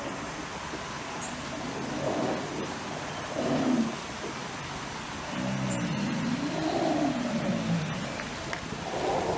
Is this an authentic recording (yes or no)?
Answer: yes